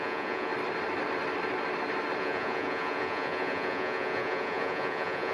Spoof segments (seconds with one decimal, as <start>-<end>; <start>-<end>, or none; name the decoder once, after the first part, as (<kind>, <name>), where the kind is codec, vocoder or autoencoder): 0.0-0.5 (vocoder, Vocos); 2.2-5.3